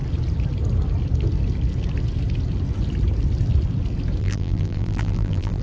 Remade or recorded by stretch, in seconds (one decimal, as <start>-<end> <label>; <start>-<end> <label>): 0.0-4.2 recorded; 4.2-5.6 remade